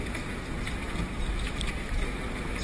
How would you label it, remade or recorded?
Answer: recorded